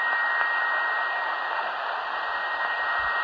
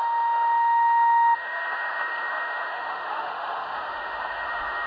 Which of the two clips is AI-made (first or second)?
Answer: second